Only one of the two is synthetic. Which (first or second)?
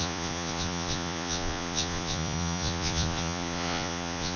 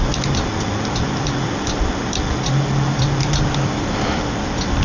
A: first